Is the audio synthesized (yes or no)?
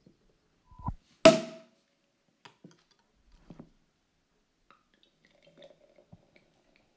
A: no